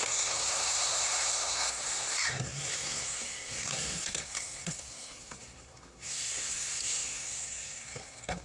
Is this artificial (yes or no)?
yes